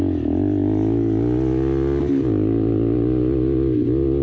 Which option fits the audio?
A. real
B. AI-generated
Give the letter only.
A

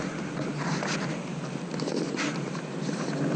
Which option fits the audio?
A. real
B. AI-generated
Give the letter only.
A